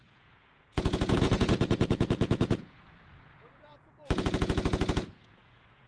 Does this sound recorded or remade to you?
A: remade